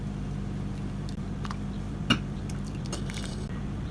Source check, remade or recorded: recorded